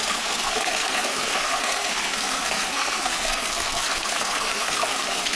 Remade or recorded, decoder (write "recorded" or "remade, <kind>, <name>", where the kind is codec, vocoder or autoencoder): remade, codec, SNAC